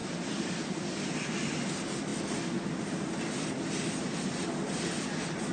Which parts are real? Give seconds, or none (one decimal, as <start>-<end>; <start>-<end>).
0.5-5.5